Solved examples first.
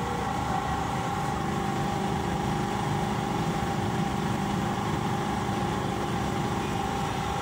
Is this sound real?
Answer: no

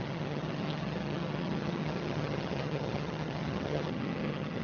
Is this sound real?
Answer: no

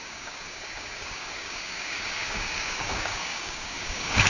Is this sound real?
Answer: no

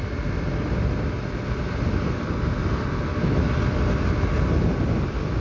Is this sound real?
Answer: yes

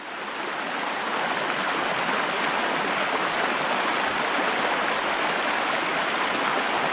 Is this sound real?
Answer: yes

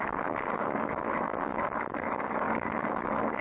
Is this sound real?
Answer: no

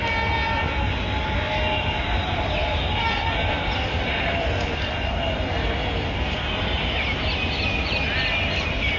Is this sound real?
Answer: yes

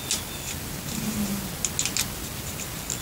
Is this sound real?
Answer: yes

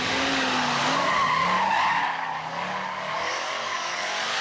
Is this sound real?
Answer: no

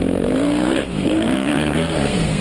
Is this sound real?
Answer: no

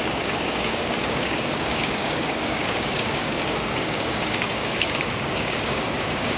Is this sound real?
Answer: no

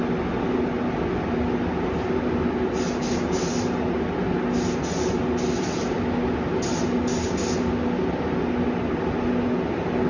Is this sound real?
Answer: yes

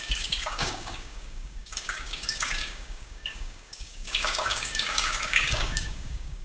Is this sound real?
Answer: no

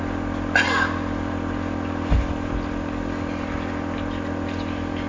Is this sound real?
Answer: yes